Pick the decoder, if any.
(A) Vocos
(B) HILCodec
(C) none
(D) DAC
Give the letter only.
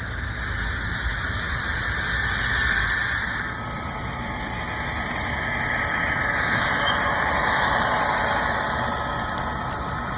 C